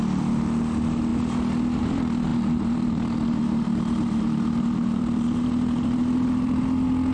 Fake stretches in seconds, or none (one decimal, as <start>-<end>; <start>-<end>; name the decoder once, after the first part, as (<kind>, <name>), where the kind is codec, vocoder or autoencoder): 2.3-6.6 (vocoder, BigVGAN v2)